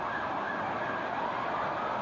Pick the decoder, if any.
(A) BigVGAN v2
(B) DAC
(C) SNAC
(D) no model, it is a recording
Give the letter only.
D